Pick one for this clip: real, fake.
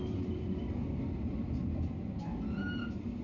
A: real